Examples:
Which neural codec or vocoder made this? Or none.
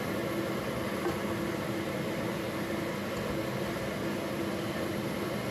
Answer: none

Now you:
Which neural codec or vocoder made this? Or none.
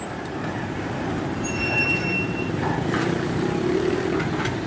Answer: vocoder, BigVGAN v2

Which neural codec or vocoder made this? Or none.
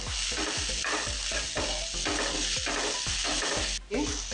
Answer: none